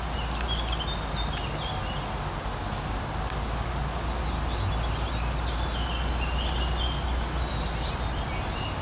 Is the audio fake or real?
real